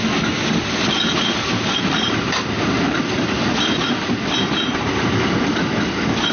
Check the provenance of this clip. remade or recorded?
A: recorded